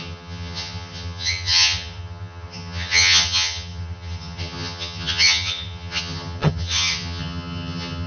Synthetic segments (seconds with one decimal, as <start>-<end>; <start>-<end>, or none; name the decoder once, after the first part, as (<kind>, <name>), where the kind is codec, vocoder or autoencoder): 0.0-8.1 (vocoder, HiFi-GAN)